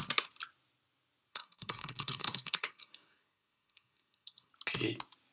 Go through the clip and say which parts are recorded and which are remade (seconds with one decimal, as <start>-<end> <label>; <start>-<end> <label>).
0.0-1.3 recorded; 1.3-4.5 remade; 4.5-5.3 recorded